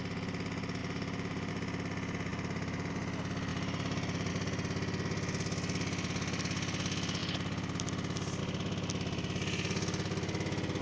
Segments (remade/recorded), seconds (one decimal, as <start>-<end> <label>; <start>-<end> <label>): 0.0-0.8 recorded; 0.8-1.5 remade; 1.5-2.3 recorded; 2.3-2.9 remade; 2.9-3.5 recorded; 3.5-4.3 remade; 4.3-10.8 recorded